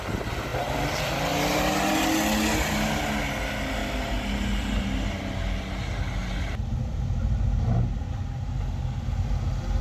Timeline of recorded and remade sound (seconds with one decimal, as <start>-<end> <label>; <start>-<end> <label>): 0.0-0.5 recorded; 0.5-1.1 remade; 1.1-9.8 recorded